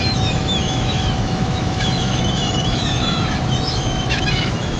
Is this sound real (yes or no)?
no